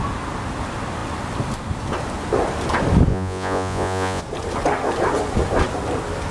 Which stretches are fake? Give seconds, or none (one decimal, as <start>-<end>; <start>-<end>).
3.1-4.2